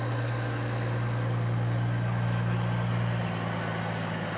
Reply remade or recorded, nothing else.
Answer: recorded